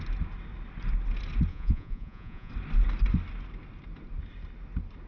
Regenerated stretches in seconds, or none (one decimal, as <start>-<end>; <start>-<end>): 1.5-2.5

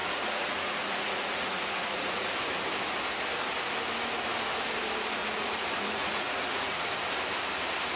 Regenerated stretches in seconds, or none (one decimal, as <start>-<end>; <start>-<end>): 0.0-2.3; 5.2-6.9

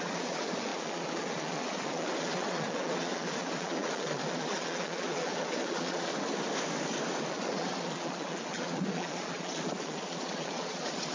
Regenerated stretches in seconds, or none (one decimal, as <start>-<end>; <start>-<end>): 0.0-6.1; 7.3-11.1

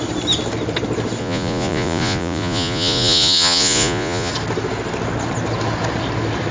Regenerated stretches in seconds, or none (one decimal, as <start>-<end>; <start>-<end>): 1.2-4.3

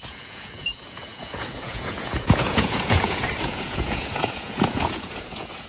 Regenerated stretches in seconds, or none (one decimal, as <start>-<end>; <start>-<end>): 0.0-5.7

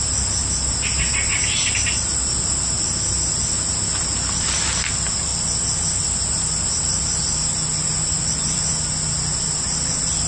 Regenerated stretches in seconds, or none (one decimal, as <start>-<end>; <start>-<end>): none

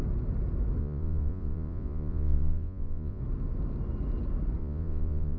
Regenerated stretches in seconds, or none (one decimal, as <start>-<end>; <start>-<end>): 0.8-3.2; 4.6-5.4

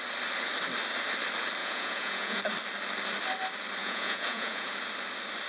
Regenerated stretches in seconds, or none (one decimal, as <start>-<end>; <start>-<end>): 1.6-2.4; 3.8-4.7